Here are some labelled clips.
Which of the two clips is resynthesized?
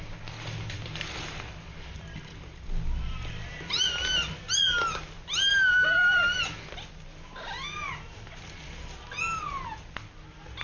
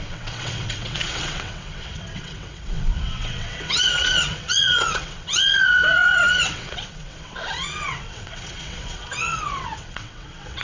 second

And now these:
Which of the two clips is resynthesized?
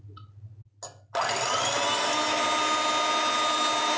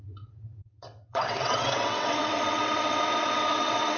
second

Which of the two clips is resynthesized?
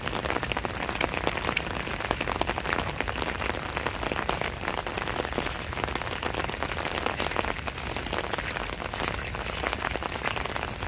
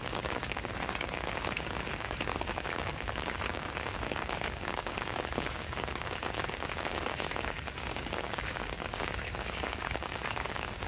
second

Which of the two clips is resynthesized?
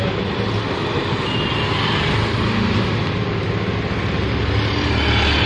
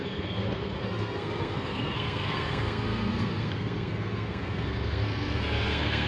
second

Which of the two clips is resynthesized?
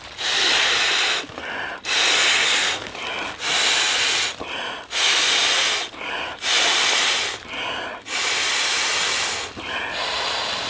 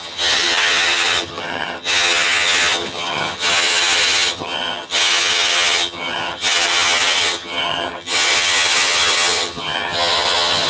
second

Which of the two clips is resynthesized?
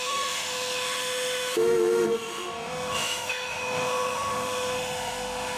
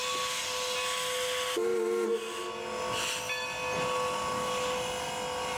first